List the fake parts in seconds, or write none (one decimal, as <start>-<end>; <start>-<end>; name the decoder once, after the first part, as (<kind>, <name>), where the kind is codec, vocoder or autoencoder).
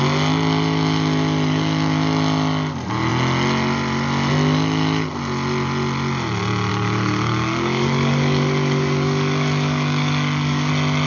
6.7-10.7 (codec, DAC)